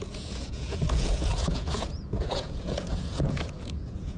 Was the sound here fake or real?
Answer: fake